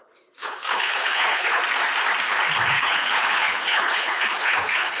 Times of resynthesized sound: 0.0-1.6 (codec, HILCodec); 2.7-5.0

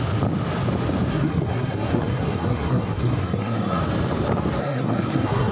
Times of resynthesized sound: 1.1-3.8 (codec, SNAC); 4.6-5.5